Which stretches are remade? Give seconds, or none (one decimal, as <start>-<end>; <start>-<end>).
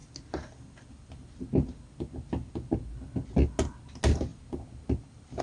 none